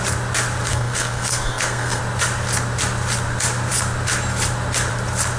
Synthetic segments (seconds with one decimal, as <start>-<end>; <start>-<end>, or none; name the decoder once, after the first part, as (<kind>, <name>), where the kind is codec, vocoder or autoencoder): 0.7-2.0 (codec, SNAC)

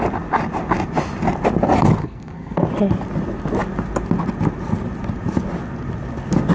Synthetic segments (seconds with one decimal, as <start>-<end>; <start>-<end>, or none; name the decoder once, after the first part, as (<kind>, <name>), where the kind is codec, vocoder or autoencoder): 2.0-2.6 (codec, SNAC)

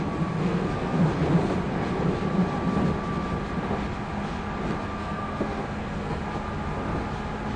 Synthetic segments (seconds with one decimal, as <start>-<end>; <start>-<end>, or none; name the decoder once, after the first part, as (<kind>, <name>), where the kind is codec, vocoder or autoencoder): 0.4-1.0 (codec, SNAC); 5.0-6.2